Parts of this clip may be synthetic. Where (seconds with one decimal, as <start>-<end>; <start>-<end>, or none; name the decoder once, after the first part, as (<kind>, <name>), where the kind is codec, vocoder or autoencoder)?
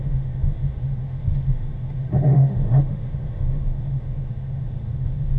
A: 0.0-5.4 (autoencoder, DAC-VAE)